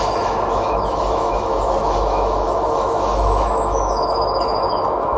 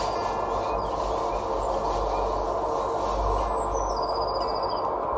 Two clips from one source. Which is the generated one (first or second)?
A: first